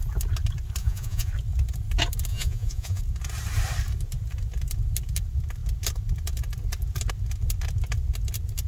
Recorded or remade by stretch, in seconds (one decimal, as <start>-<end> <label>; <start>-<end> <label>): 0.0-0.8 recorded; 0.8-1.3 remade; 1.3-2.3 recorded; 2.3-3.0 remade; 3.0-8.7 recorded